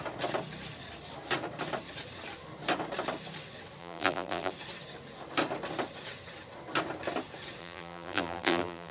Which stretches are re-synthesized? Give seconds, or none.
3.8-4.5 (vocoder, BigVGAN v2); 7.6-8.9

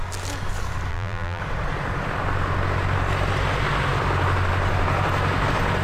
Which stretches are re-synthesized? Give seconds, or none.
0.9-1.4 (vocoder, BigVGAN v2)

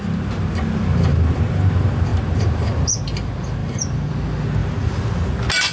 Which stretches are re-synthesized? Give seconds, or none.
3.6-4.1 (vocoder, BigVGAN v2); 4.6-5.3